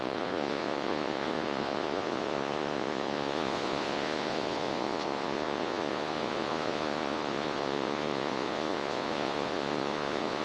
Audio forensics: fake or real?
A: fake